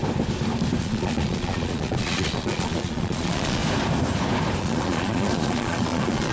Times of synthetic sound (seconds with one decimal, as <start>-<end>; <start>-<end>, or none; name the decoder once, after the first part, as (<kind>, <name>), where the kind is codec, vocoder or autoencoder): 0.8-3.6 (vocoder, Vocos); 4.6-6.3